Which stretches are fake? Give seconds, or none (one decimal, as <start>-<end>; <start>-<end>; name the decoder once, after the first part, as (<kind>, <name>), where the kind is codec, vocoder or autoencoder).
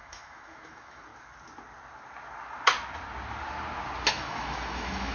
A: 0.0-1.1 (autoencoder, DAC-VAE); 4.1-5.1